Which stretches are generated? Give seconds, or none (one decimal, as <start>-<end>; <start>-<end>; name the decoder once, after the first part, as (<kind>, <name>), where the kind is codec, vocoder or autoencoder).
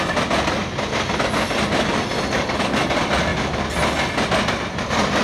0.6-2.1 (vocoder, BigVGAN v2)